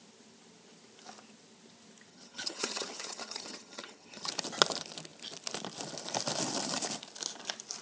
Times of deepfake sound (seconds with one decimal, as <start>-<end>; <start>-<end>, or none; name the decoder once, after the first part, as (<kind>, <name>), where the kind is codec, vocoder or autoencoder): 2.1-4.3 (vocoder, HiFi-GAN)